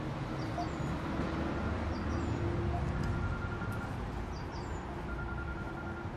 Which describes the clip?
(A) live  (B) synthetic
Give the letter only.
A